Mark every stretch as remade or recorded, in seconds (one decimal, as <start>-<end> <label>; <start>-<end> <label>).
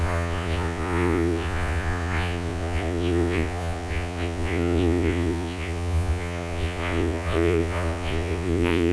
0.0-8.9 remade